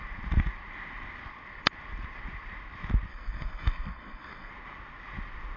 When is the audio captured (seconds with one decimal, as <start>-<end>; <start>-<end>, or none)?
0.0-3.1; 4.5-5.6